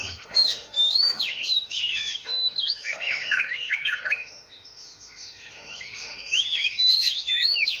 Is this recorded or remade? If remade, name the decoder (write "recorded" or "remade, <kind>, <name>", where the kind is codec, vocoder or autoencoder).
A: remade, autoencoder, DAC-VAE